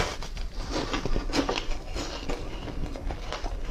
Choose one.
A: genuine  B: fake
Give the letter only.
A